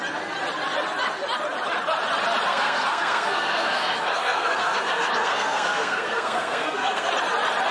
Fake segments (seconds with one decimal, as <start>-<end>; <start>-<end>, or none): 2.5-7.1